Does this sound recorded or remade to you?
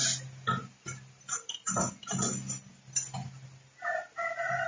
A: recorded